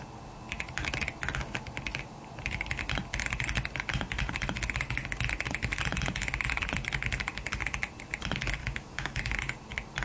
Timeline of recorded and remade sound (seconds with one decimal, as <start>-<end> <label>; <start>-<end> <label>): 0.0-8.6 recorded; 8.6-9.2 remade; 9.2-10.0 recorded